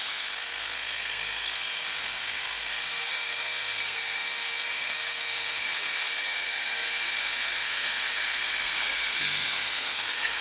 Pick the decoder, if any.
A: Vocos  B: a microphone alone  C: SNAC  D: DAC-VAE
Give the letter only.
C